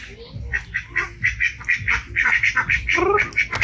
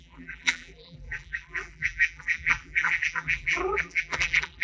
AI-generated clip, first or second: second